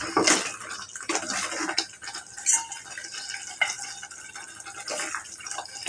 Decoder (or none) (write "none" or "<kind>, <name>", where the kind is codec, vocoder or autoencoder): none